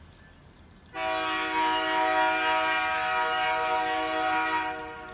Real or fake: real